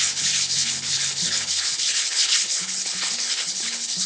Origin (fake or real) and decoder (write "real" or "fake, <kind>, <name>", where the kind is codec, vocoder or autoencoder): fake, codec, HILCodec